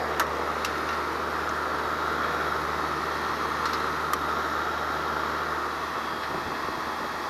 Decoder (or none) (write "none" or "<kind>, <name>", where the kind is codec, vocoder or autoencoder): none